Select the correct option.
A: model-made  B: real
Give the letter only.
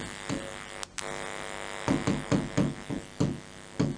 B